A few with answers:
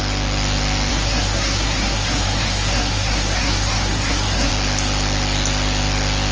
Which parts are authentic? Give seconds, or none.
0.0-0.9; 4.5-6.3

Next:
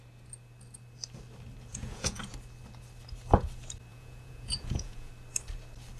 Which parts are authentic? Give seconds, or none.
0.0-1.7; 2.2-3.9; 5.1-6.0